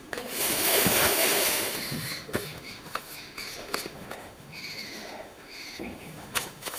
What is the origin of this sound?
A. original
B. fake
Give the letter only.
B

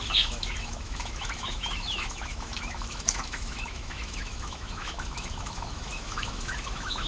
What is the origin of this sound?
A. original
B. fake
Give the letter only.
B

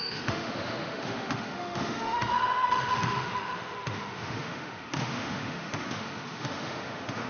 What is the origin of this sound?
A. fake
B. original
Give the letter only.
A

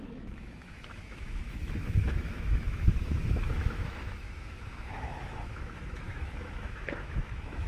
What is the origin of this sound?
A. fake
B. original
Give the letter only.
A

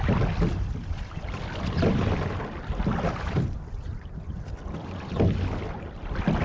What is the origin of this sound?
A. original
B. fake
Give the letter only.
A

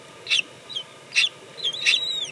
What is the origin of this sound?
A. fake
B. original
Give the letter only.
B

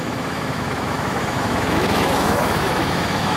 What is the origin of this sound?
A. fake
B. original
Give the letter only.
A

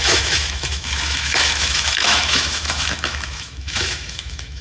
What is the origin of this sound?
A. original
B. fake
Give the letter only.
B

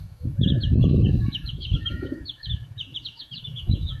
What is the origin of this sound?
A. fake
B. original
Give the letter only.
A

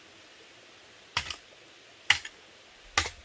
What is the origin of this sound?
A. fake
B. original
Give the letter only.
B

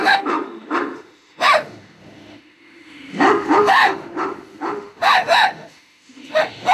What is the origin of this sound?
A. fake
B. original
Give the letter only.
A